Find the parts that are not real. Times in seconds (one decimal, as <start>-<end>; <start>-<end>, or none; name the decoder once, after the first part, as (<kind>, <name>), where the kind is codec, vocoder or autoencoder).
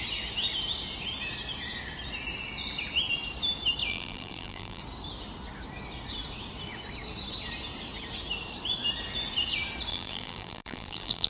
3.9-4.8 (vocoder, BigVGAN v2); 9.9-11.3